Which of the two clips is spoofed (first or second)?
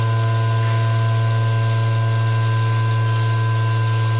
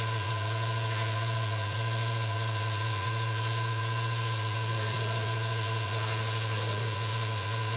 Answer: second